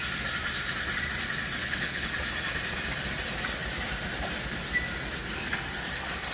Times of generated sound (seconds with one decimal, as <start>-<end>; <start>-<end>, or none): 1.6-2.1